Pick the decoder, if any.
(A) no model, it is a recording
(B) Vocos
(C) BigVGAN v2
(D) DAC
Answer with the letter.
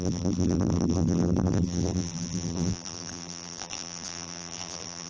C